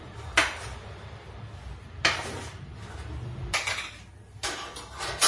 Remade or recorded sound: recorded